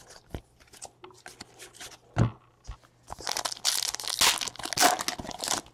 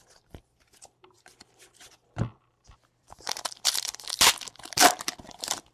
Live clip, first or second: first